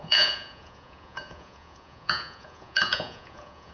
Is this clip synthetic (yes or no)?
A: yes